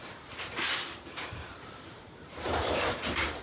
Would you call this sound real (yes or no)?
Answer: no